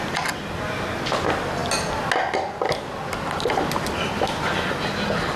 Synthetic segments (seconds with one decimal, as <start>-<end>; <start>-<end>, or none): none